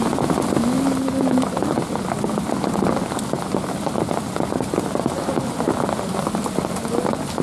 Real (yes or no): yes